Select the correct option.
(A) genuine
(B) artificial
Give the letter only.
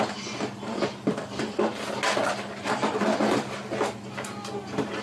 A